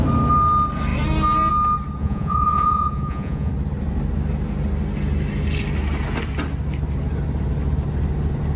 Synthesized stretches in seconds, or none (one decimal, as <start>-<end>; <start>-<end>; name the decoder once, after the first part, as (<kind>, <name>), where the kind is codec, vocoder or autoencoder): 2.0-3.5 (vocoder, Vocos)